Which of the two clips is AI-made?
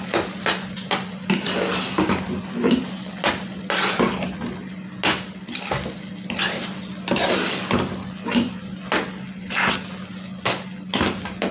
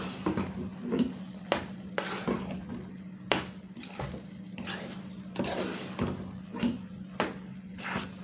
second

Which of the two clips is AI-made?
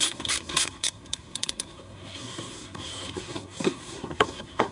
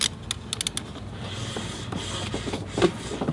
first